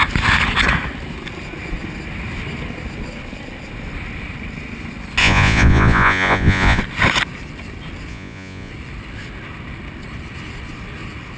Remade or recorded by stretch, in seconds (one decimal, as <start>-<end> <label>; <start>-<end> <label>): 0.0-5.2 recorded; 5.2-6.8 remade; 6.8-8.1 recorded; 8.1-8.7 remade; 8.7-11.4 recorded